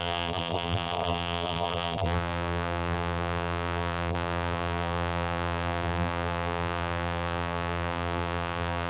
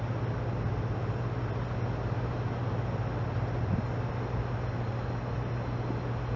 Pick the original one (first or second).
second